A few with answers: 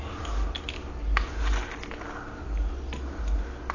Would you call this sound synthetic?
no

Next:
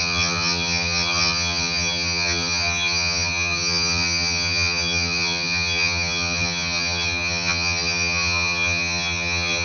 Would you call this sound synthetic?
yes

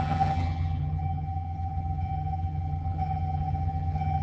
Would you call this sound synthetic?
yes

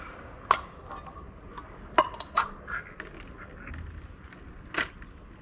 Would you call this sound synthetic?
no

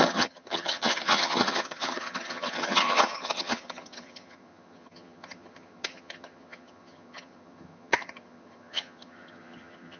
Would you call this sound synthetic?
yes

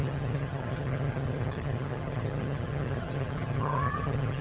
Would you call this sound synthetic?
yes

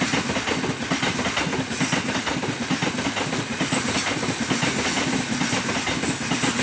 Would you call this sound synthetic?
no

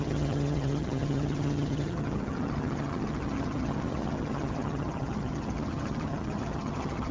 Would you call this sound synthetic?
yes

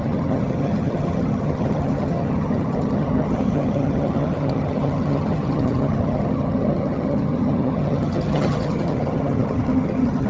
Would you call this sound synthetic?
yes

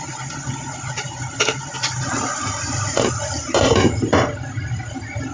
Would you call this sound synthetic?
no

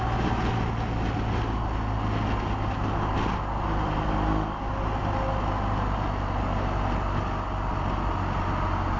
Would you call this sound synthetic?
no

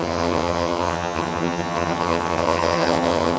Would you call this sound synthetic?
yes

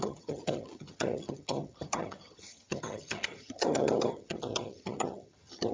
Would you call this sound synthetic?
yes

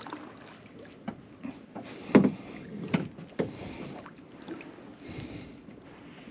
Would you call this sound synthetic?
no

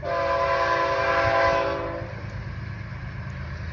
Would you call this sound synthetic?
no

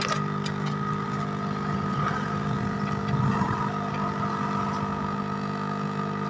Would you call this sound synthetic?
no